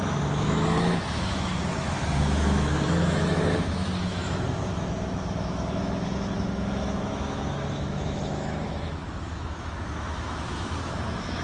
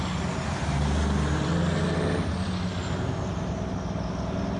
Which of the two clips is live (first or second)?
second